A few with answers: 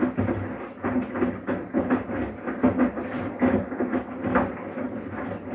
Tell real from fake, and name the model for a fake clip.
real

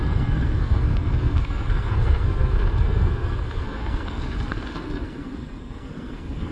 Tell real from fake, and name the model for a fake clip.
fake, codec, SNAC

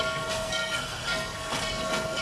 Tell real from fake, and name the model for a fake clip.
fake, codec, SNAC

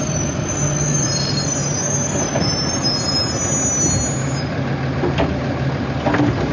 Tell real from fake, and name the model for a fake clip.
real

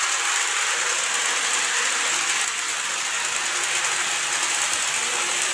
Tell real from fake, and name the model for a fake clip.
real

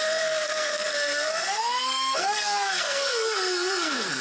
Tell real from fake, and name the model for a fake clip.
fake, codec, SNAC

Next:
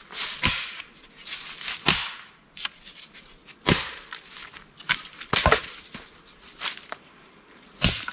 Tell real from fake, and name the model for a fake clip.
real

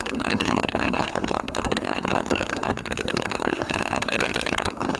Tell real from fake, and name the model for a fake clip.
fake, codec, SNAC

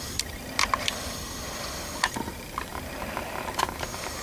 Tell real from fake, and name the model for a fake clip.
real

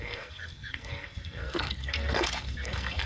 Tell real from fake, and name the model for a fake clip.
fake, codec, SNAC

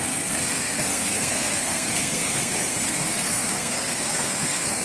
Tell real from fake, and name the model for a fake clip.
fake, codec, SNAC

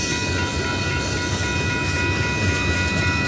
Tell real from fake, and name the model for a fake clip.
real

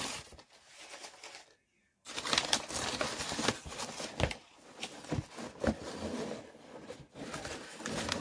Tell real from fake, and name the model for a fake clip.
real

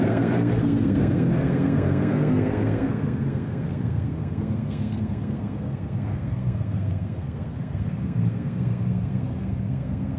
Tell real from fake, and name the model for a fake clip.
fake, codec, SNAC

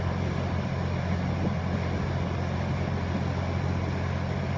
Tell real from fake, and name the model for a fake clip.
real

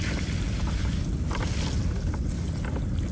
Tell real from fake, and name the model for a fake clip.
real